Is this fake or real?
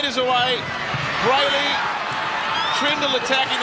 real